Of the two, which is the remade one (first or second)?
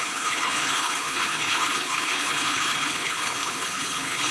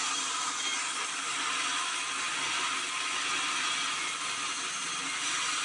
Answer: first